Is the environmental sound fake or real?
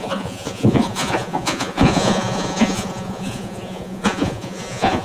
fake